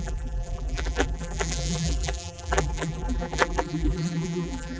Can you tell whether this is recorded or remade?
remade